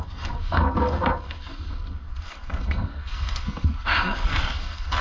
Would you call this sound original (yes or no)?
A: no